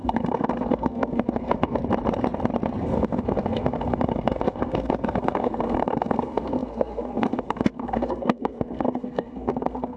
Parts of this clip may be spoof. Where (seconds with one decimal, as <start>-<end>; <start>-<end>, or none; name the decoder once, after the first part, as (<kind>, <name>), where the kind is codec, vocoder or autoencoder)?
0.0-1.8 (codec, SNAC); 2.8-10.0